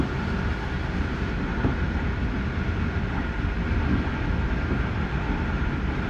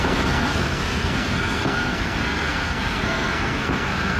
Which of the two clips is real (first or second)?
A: first